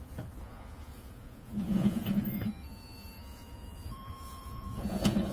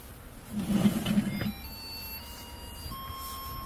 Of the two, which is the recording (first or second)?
second